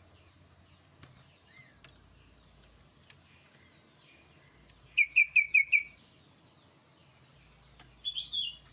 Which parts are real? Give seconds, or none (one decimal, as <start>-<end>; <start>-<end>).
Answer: 0.0-5.2; 5.7-8.7